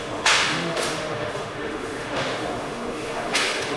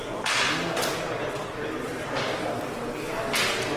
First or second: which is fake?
first